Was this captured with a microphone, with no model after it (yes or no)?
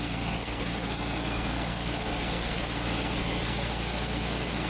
no